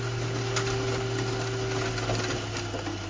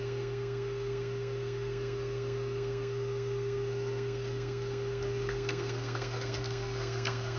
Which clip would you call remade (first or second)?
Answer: second